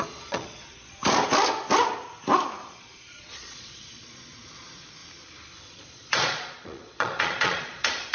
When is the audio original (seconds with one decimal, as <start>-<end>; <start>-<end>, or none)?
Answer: 1.0-2.8; 5.0-5.6